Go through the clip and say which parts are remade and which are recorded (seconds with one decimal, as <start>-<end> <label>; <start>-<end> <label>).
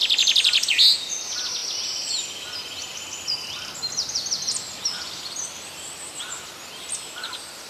0.0-7.7 recorded